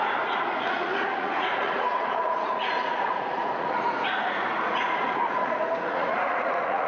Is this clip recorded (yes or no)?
no